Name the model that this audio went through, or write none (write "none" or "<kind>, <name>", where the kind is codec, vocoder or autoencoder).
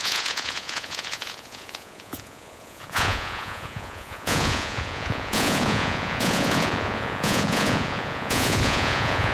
vocoder, Vocos